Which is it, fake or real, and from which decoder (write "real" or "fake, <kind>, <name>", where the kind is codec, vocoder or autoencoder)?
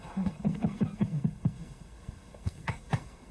fake, codec, SNAC